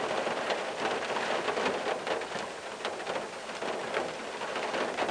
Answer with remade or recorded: recorded